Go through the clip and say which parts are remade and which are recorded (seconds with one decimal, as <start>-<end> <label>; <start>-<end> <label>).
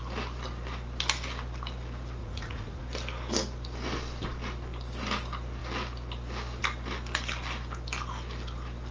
0.0-2.2 recorded; 2.2-2.8 remade; 2.8-8.9 recorded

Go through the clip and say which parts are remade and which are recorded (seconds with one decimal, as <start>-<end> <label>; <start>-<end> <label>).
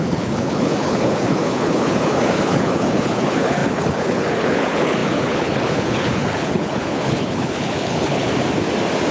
0.0-8.3 remade; 8.3-9.1 recorded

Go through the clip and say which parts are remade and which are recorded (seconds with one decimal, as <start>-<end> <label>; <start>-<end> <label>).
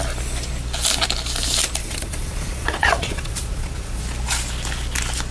0.0-1.8 recorded; 1.8-4.0 remade; 4.0-5.3 recorded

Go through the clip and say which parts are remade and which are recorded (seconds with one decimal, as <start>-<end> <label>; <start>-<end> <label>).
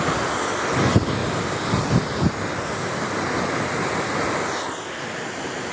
0.0-5.7 recorded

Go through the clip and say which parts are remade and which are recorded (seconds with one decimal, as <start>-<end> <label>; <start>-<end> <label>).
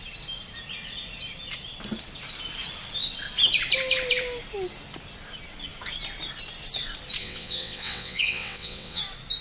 0.0-7.2 recorded; 7.2-9.0 remade; 9.0-9.4 recorded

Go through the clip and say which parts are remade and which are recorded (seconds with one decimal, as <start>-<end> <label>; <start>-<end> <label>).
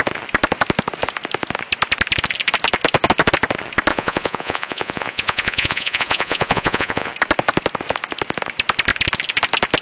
0.0-3.9 recorded; 3.9-7.1 remade; 7.1-9.8 recorded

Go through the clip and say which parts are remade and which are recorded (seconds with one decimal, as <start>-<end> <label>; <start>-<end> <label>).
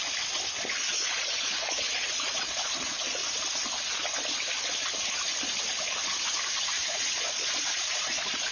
0.0-0.6 recorded; 0.6-3.2 remade; 3.2-6.6 recorded; 6.6-8.5 remade